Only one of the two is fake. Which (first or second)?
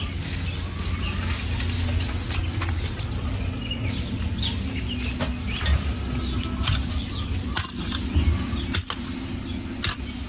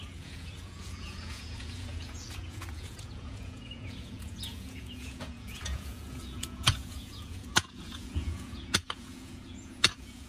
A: second